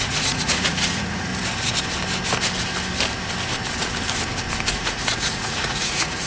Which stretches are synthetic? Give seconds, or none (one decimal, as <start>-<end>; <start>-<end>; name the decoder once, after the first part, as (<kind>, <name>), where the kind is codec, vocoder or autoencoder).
0.0-1.3 (vocoder, Vocos); 4.7-6.3